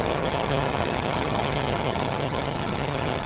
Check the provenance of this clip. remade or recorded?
remade